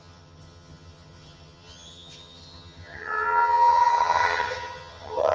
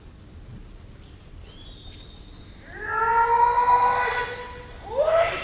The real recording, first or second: second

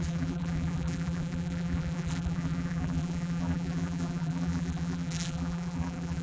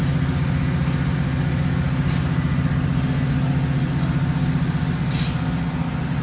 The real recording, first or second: second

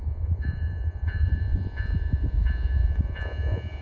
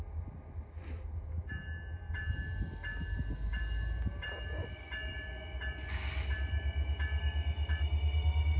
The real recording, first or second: second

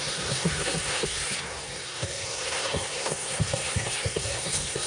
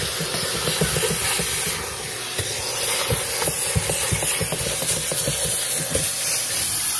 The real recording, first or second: second